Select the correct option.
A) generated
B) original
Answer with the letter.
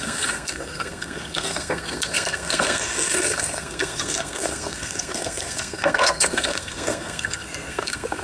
A